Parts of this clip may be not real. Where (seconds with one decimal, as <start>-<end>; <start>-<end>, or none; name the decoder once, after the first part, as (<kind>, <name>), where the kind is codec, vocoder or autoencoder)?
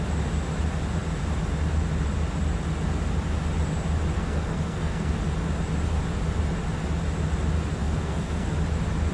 4.1-5.1 (codec, SNAC); 7.8-8.5